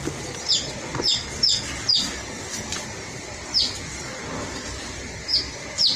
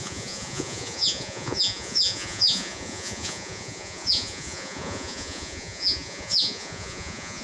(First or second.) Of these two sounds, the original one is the first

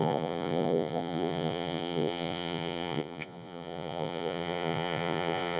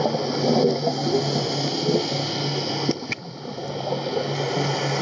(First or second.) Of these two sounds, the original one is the second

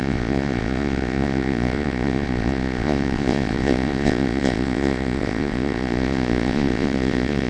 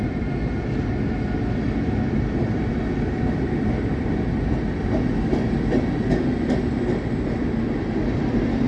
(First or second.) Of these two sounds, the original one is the second